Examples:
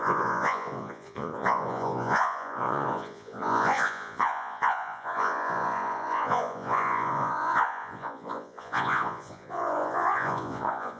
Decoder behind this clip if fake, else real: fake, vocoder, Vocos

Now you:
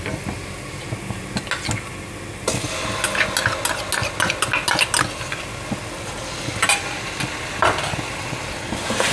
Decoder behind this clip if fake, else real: real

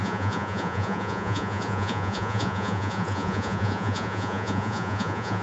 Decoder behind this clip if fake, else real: fake, vocoder, Vocos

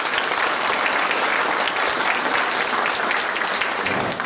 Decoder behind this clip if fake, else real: real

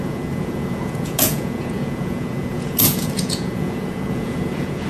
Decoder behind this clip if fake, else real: fake, vocoder, Vocos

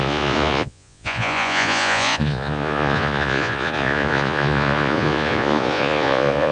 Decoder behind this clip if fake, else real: fake, vocoder, Vocos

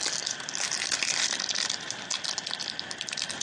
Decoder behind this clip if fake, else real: real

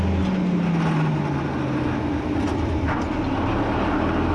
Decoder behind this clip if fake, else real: real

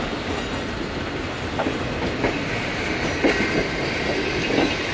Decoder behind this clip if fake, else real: real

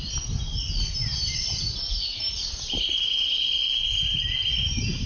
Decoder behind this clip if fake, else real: real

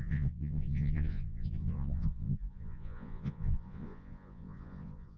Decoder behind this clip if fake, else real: fake, vocoder, Vocos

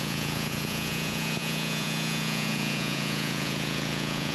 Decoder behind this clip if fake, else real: fake, vocoder, Vocos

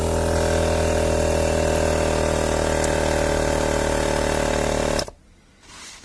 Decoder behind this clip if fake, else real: real